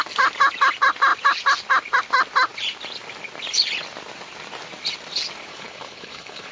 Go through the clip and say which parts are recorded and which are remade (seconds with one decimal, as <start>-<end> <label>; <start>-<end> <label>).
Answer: 0.0-5.5 recorded; 5.5-6.5 remade